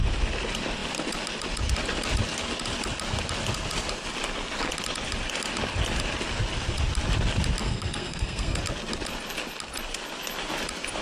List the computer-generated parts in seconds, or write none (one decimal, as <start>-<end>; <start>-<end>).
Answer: 7.6-8.6